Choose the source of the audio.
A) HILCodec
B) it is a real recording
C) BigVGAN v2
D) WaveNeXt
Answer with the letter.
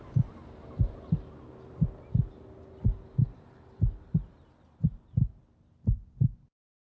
B